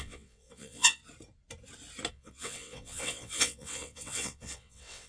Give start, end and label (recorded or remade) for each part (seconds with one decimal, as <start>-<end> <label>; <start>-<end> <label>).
0.0-1.0 remade; 1.0-2.1 recorded; 2.1-5.1 remade

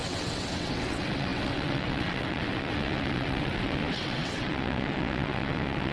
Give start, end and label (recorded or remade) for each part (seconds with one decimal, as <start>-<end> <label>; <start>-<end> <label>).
0.0-5.9 remade

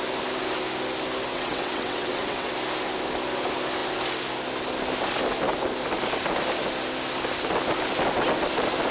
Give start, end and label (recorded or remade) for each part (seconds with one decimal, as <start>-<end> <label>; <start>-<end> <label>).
0.0-1.3 recorded; 1.3-2.5 remade; 2.5-8.9 recorded

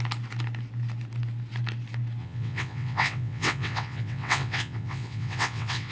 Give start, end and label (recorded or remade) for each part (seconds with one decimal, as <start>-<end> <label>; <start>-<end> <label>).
0.0-2.2 recorded; 2.2-5.9 remade

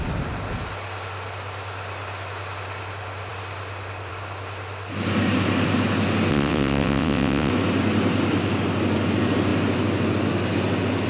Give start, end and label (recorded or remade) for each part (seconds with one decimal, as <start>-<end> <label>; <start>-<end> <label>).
0.0-6.3 recorded; 6.3-7.5 remade; 7.5-11.1 recorded

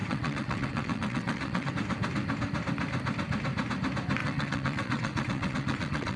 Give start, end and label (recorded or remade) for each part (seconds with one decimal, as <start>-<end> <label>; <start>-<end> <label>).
0.0-1.7 remade; 1.7-4.2 recorded; 4.2-6.2 remade